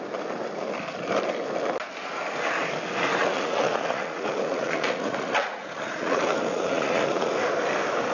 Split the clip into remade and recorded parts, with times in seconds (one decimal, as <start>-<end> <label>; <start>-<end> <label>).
0.0-3.2 recorded; 3.2-7.3 remade; 7.3-8.1 recorded